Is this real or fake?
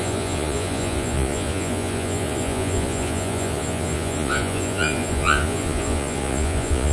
fake